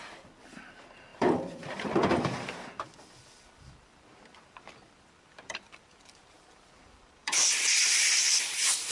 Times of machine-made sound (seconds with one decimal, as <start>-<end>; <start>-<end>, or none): 0.0-8.9